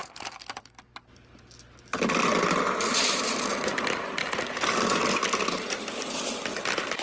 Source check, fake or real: real